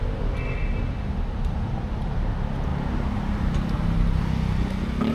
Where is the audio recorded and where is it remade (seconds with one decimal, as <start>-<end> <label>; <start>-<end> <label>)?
0.0-5.1 recorded